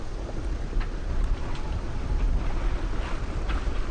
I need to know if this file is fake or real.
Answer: real